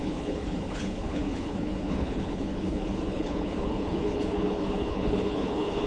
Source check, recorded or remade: remade